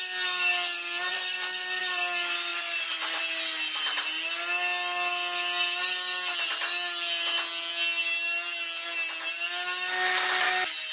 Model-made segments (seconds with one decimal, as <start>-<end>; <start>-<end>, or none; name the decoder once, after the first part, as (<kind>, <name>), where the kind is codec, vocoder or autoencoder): 1.1-1.8 (vocoder, BigVGAN v2); 2.5-3.2